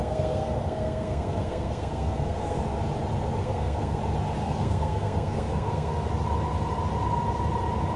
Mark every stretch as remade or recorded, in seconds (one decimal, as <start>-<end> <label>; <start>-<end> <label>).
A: 0.0-2.6 remade; 2.6-3.4 recorded; 3.4-4.0 remade; 4.0-4.4 recorded; 4.4-6.1 remade; 6.1-8.0 recorded